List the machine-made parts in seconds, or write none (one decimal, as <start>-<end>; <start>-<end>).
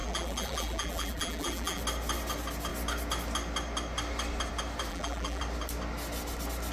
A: 0.0-1.8; 4.9-5.4